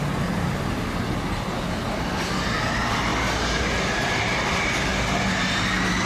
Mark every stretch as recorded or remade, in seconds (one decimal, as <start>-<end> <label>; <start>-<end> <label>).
0.0-6.1 recorded